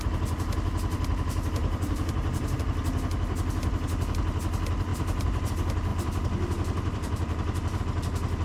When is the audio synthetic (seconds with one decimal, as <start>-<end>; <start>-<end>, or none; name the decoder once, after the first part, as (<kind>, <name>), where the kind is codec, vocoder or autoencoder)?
1.6-2.6 (vocoder, BigVGAN v2); 4.9-5.5; 5.9-7.8

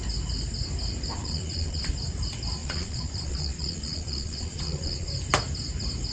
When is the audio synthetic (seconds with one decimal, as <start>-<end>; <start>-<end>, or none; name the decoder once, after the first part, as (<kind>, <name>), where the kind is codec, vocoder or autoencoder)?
1.1-1.9 (vocoder, Vocos); 2.6-5.1